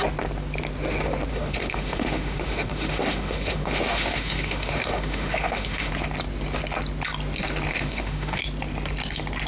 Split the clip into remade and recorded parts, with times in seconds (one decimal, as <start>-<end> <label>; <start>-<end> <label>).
0.0-1.3 recorded; 1.3-5.9 remade; 5.9-7.7 recorded; 7.7-8.4 remade; 8.4-9.5 recorded

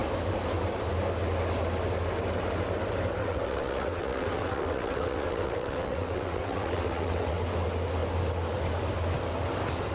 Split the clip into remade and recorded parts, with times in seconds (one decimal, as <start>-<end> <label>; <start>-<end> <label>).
0.0-3.2 recorded; 3.2-7.4 remade; 7.4-9.9 recorded

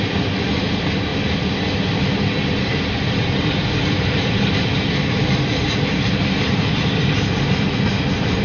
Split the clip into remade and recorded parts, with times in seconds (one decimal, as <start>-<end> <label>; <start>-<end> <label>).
0.0-8.4 recorded

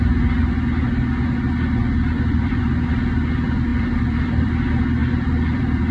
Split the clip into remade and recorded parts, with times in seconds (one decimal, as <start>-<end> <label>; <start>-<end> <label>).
0.0-1.8 recorded; 1.8-2.6 remade; 2.6-3.7 recorded; 3.7-4.5 remade; 4.5-5.0 recorded; 5.0-5.9 remade

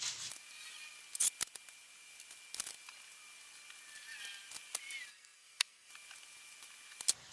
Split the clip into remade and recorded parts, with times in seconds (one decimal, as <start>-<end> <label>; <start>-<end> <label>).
0.0-5.1 recorded; 5.1-5.9 remade; 5.9-7.3 recorded

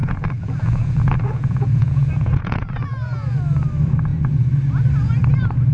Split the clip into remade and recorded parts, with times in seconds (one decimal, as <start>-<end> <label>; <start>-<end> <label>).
0.0-3.4 remade; 3.4-5.7 recorded

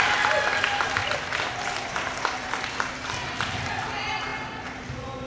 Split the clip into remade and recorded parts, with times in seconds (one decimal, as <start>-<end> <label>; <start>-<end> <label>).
0.0-5.3 recorded